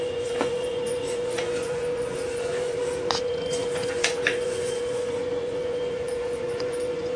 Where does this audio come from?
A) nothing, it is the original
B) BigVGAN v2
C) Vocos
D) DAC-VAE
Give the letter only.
C